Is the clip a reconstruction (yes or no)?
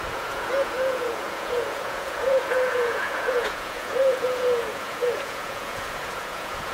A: yes